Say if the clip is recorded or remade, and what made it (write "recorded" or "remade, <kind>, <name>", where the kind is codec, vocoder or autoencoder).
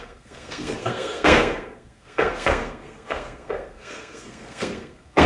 remade, codec, SNAC